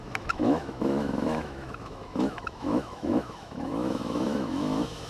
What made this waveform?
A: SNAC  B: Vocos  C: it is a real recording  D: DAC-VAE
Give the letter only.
D